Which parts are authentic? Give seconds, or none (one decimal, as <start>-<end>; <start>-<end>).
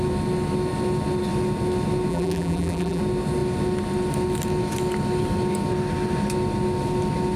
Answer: 0.0-2.1; 3.0-7.4